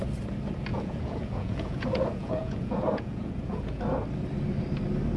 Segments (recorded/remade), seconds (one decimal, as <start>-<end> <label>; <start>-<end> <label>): 0.0-0.7 recorded; 0.7-3.8 remade; 3.8-5.2 recorded